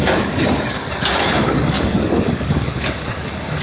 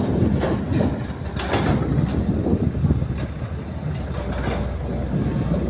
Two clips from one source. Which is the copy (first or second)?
first